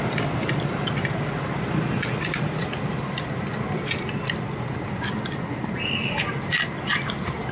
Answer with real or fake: real